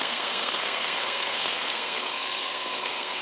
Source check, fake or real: fake